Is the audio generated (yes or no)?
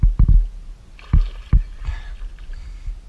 no